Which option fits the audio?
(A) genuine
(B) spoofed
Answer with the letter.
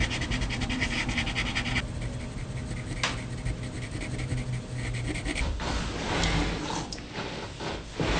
A